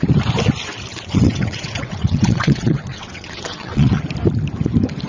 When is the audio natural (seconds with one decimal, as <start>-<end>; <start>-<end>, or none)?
0.0-0.9; 4.0-5.1